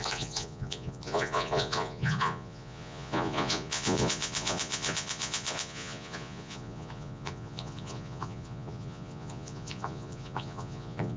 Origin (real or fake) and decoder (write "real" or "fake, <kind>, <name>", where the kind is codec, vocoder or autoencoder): fake, vocoder, Vocos